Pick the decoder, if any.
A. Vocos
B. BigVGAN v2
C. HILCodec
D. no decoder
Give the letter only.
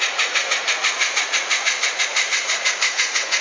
A